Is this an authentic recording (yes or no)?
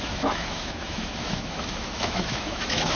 no